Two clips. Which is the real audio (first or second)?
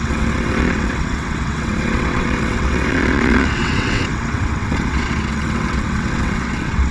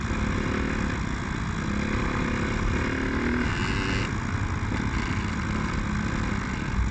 second